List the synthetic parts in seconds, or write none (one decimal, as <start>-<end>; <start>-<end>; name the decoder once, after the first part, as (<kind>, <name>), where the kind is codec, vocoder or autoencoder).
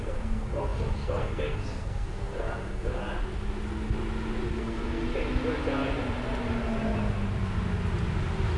0.0-3.0 (codec, SNAC); 4.5-5.0